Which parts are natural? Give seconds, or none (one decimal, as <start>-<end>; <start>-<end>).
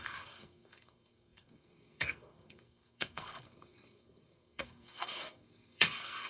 none